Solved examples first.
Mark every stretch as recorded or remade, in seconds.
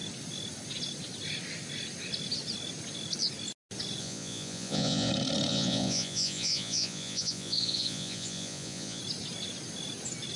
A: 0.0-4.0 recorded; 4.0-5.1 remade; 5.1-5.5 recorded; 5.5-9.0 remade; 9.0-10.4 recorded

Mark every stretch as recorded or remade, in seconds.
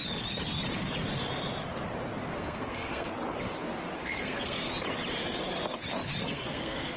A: 0.0-2.3 recorded; 2.3-3.1 remade; 3.1-4.0 recorded; 4.0-4.7 remade; 4.7-6.3 recorded; 6.3-7.0 remade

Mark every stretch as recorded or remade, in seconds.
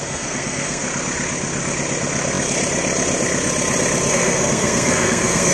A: 0.0-0.8 remade; 0.8-4.1 recorded; 4.1-5.5 remade